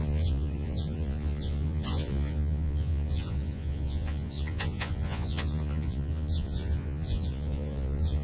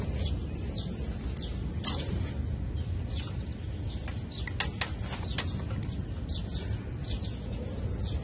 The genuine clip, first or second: second